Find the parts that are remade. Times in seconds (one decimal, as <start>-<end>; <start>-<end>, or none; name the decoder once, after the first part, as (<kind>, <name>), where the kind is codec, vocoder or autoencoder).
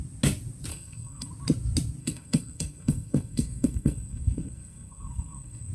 0.7-1.3 (codec, SNAC); 2.0-5.7